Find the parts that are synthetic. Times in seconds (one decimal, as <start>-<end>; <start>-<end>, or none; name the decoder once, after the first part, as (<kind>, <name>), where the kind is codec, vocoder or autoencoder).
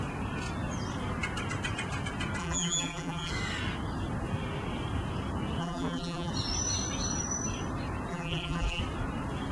2.4-3.3 (vocoder, BigVGAN v2); 5.6-6.3; 8.1-8.8